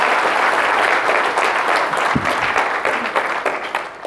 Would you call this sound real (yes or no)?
yes